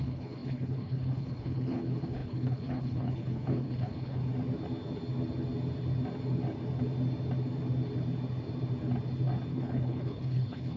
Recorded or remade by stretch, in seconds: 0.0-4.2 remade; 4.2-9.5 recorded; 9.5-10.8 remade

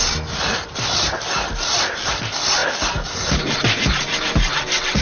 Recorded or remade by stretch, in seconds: 0.0-5.0 recorded

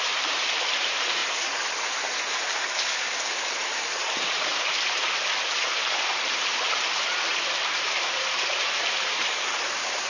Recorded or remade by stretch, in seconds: 0.0-1.2 remade; 1.2-3.4 recorded; 3.4-4.5 remade; 4.5-7.3 recorded; 7.3-10.1 remade